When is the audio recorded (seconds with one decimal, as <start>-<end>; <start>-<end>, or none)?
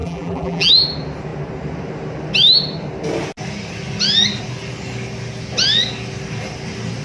0.7-7.0